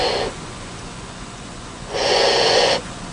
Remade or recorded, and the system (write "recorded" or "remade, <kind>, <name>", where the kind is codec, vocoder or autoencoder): remade, vocoder, Vocos